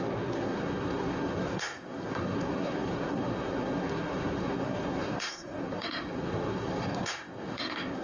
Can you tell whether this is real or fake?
fake